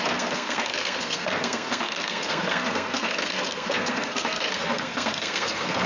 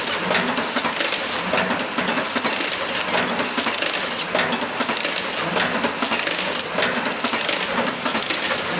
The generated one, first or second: first